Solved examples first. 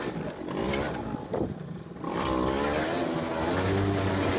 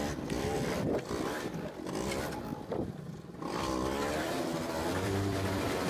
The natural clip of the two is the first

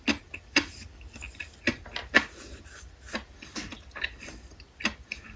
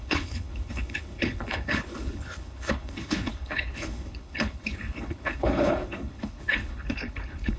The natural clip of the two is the first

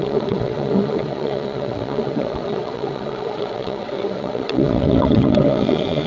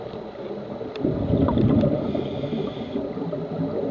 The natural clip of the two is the second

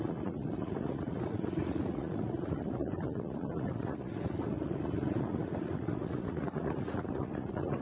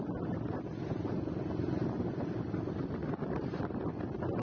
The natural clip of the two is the second